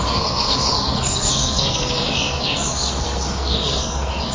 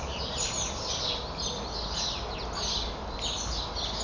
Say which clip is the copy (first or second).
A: first